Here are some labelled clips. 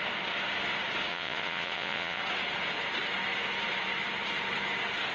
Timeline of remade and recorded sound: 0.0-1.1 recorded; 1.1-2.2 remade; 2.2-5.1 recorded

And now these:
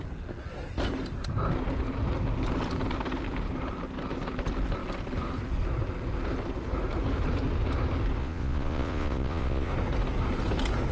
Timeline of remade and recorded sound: 0.0-8.2 recorded; 8.2-9.7 remade; 9.7-10.9 recorded

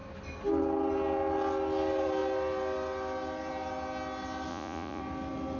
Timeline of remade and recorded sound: 0.0-4.5 recorded; 4.5-5.0 remade; 5.0-5.6 recorded

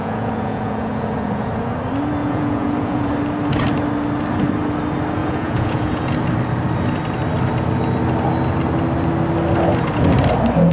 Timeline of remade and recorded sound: 0.0-1.5 remade; 1.5-2.2 recorded; 2.2-3.1 remade; 3.1-5.2 recorded; 5.2-6.1 remade; 6.1-10.7 recorded

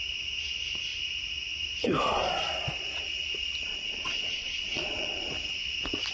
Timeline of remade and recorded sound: 0.0-3.7 recorded; 3.7-5.3 remade; 5.3-6.1 recorded

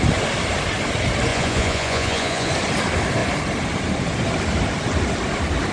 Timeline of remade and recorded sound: 0.0-1.3 recorded; 1.3-2.5 remade; 2.5-5.7 recorded